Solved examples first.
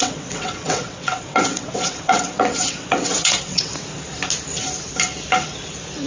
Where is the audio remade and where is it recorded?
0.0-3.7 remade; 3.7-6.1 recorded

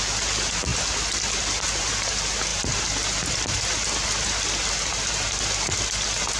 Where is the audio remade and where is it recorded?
0.0-6.4 recorded

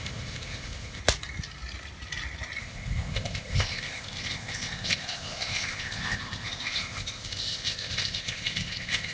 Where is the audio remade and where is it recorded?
0.0-1.0 remade; 1.0-2.6 recorded; 2.6-9.1 remade

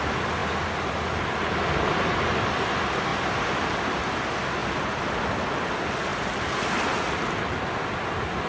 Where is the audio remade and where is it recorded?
0.0-6.1 recorded; 6.1-6.8 remade; 6.8-8.5 recorded

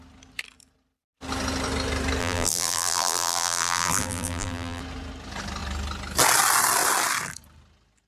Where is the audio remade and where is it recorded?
0.0-2.2 recorded; 2.2-4.8 remade; 4.8-8.1 recorded